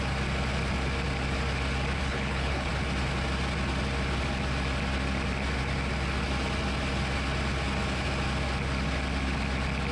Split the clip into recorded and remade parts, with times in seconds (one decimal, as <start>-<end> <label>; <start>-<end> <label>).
0.0-2.0 recorded; 2.0-2.7 remade; 2.7-9.9 recorded